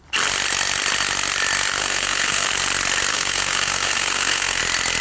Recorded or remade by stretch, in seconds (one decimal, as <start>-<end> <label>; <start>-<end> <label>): 0.0-1.8 recorded; 1.8-2.5 remade; 2.5-3.1 recorded; 3.1-4.6 remade; 4.6-5.0 recorded